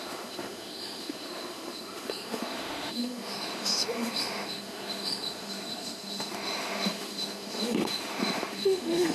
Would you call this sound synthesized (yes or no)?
yes